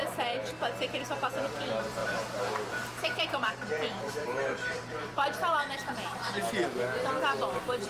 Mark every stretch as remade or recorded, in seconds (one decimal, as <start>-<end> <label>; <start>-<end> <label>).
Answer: 0.0-2.0 recorded; 2.0-5.9 remade; 5.9-7.9 recorded